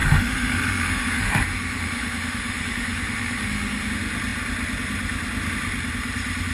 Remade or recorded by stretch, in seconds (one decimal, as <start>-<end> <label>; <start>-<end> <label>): 0.0-3.9 remade; 3.9-6.5 recorded